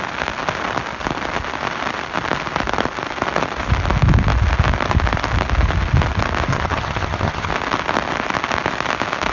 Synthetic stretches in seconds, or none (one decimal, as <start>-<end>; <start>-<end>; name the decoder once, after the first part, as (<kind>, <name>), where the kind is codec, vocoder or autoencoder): 6.5-7.5 (vocoder, HiFi-GAN)